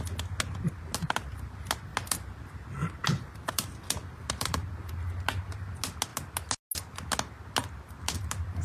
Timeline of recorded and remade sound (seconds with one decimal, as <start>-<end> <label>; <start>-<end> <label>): 0.0-3.0 recorded; 3.0-4.9 remade; 4.9-8.6 recorded